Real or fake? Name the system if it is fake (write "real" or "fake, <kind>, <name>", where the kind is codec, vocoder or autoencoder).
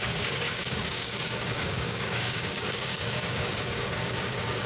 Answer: fake, codec, DAC